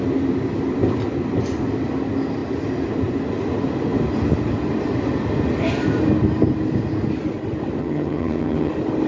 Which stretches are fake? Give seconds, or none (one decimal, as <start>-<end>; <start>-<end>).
7.8-8.7